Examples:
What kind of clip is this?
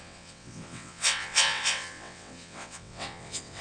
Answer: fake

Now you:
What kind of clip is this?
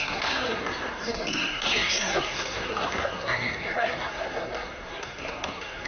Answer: fake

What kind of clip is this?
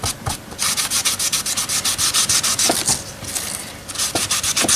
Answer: real